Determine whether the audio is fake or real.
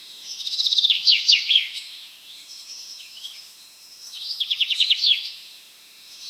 fake